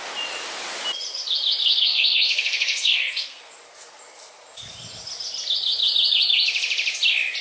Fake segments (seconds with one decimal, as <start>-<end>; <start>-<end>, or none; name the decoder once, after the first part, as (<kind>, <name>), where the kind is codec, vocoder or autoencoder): 1.6-3.5 (codec, SNAC)